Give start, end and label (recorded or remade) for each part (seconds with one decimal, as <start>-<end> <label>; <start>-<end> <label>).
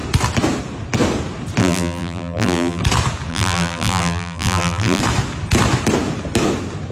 0.0-1.6 recorded; 1.6-2.8 remade; 2.8-3.3 recorded; 3.3-5.0 remade; 5.0-6.9 recorded